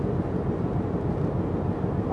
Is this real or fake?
real